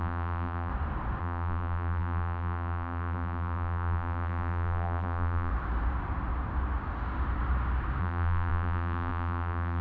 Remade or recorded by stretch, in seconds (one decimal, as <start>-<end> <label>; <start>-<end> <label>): 0.0-0.7 remade; 0.7-1.2 recorded; 1.2-5.5 remade; 5.5-8.0 recorded; 8.0-9.8 remade